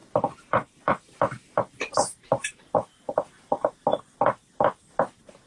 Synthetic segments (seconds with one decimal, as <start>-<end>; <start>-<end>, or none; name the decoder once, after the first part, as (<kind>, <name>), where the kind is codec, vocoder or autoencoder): 0.0-2.7 (vocoder, BigVGAN v2)